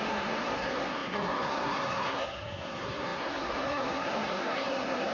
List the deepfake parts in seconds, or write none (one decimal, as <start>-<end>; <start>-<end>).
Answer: 0.0-5.1